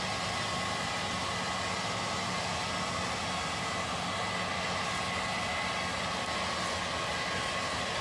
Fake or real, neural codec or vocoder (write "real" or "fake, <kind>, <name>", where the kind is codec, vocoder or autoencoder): real